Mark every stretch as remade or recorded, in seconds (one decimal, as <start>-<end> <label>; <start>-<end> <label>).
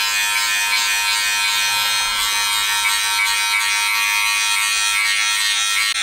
0.0-6.0 recorded